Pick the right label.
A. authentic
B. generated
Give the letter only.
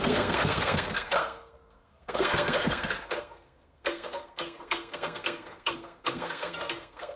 B